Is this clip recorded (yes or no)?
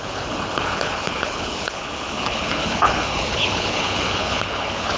no